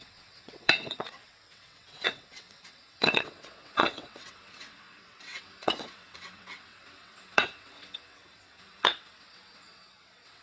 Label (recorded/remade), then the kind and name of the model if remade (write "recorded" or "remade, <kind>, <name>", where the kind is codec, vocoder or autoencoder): remade, vocoder, WaveNeXt